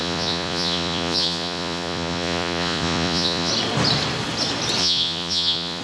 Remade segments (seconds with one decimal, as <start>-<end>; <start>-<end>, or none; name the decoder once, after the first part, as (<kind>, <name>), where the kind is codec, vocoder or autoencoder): 0.0-3.5 (vocoder, Vocos); 4.8-5.8